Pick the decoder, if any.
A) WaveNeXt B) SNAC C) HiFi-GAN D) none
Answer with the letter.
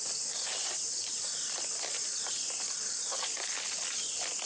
D